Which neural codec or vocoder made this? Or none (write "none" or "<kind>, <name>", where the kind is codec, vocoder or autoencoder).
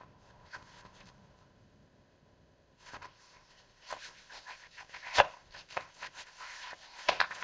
codec, ZipCodec